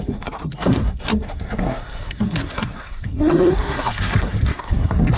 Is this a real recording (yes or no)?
no